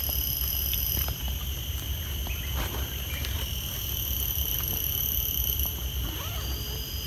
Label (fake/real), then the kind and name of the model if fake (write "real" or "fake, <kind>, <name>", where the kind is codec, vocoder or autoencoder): real